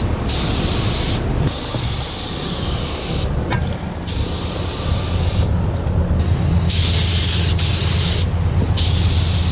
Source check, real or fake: real